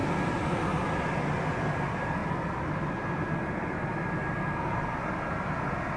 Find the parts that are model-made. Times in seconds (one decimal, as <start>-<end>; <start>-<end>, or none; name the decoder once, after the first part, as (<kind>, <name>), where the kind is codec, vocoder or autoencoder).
0.0-1.4 (vocoder, BigVGAN v2); 2.2-3.0